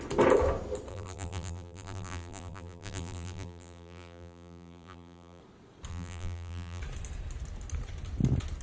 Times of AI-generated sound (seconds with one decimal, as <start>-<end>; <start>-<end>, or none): 0.9-5.4; 5.9-6.8